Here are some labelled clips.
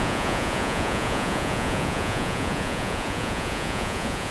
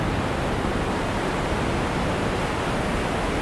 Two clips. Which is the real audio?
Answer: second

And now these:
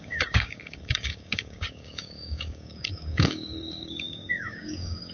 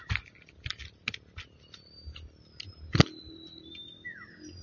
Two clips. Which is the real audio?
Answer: second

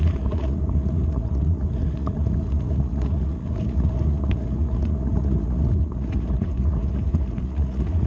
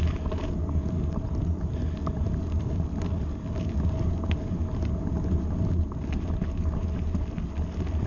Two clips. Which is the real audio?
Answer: second